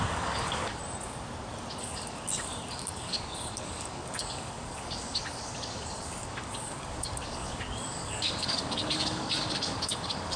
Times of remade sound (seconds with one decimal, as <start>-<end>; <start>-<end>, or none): 0.0-0.8; 1.8-10.4

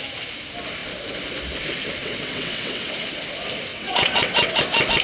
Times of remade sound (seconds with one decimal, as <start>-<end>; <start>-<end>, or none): 2.0-2.9; 3.7-4.6

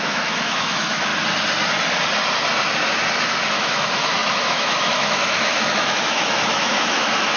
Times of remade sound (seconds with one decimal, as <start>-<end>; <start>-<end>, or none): 0.0-1.1; 3.5-7.4